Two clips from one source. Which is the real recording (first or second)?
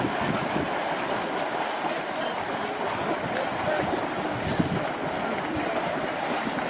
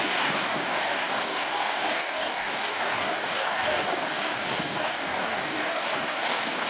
first